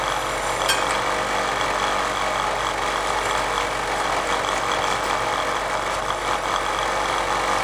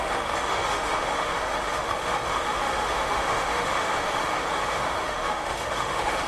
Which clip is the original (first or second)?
first